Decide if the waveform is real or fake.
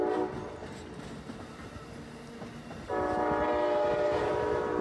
real